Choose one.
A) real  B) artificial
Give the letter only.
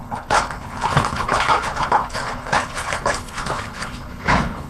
B